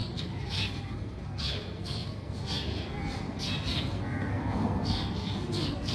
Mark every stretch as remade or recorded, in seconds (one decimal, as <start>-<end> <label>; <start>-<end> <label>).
0.0-5.9 remade